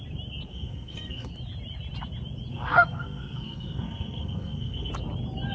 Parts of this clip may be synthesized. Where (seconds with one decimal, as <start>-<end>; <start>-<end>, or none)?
0.5-1.3; 2.5-4.9